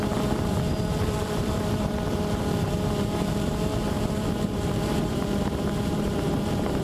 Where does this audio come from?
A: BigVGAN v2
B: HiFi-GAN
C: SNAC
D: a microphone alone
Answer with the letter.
A